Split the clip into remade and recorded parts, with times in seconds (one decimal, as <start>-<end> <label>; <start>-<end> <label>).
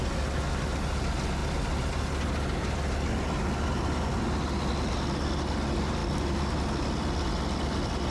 0.0-8.1 recorded